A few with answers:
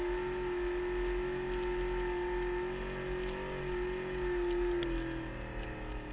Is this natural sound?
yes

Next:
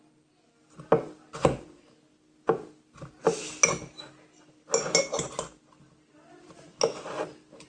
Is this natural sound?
yes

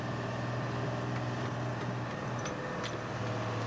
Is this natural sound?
yes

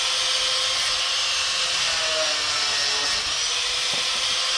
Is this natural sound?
yes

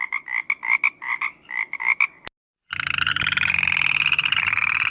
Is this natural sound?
yes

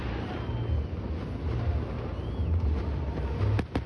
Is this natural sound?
yes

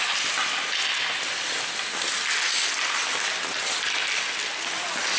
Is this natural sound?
yes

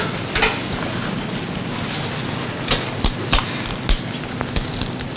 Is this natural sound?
yes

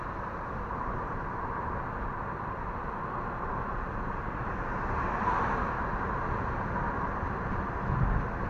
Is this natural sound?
yes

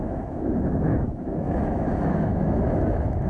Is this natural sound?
no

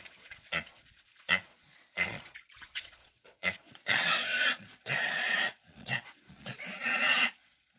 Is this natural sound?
no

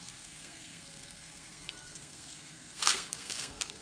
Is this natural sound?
no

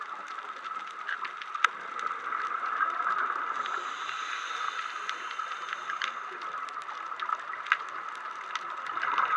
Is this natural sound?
yes